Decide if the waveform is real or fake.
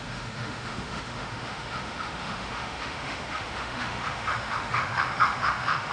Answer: fake